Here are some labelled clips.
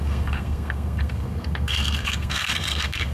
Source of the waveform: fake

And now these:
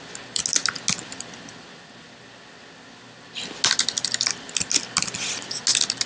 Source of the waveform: real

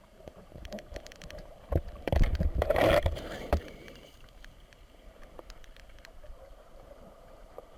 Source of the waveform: fake